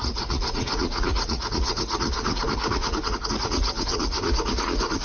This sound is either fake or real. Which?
fake